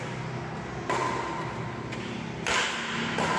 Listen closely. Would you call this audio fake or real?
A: real